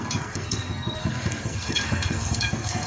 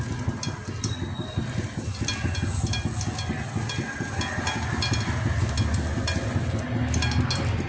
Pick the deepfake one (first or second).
first